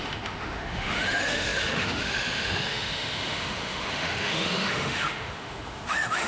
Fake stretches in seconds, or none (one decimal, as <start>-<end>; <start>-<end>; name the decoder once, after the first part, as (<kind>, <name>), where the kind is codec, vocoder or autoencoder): 0.0-6.3 (autoencoder, DAC-VAE)

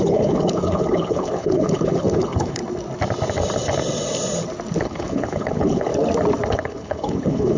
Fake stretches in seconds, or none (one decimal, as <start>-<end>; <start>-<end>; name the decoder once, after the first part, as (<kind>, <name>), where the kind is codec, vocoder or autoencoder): 0.0-2.6 (codec, HILCodec); 4.8-5.9; 6.5-7.6